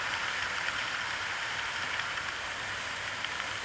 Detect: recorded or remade remade